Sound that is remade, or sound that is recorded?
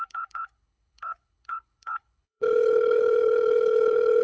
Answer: remade